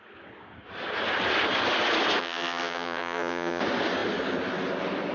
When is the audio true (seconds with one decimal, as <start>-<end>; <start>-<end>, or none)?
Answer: 0.0-2.2; 3.6-5.1